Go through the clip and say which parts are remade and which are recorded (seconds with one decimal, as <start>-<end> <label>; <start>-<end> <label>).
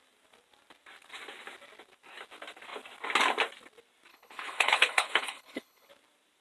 0.0-4.1 recorded; 4.1-5.9 remade; 5.9-6.4 recorded